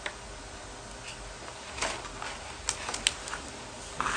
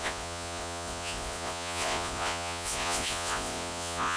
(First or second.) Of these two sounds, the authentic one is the first